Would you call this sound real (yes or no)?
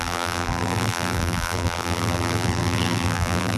no